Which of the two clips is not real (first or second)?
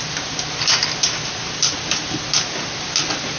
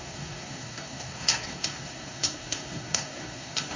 second